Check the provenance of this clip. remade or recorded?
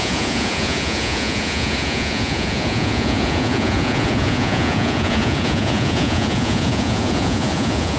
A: remade